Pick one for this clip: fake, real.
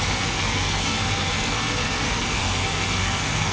fake